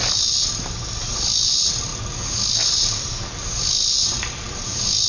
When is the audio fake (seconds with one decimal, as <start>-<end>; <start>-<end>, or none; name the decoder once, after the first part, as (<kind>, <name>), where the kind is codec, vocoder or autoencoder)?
none